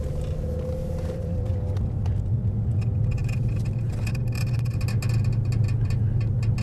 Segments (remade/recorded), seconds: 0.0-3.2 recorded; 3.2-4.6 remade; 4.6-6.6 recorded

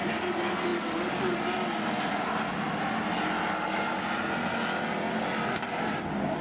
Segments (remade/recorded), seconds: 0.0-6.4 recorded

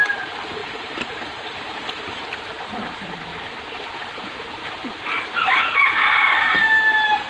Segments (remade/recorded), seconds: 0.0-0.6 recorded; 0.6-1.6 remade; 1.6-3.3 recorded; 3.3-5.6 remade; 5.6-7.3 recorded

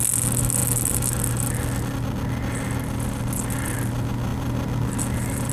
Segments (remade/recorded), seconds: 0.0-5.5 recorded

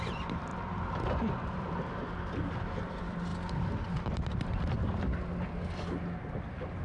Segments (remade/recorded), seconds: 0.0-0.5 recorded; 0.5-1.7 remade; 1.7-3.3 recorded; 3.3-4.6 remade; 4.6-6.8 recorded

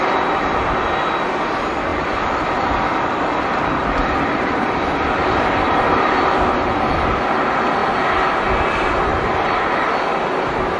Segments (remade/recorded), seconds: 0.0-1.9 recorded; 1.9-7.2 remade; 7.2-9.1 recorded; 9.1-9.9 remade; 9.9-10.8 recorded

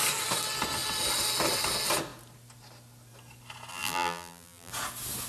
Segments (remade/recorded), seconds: 0.0-3.7 recorded; 3.7-4.7 remade; 4.7-5.3 recorded